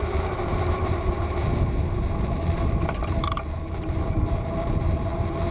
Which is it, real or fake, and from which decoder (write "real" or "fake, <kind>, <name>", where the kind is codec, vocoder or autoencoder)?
fake, vocoder, BigVGAN v2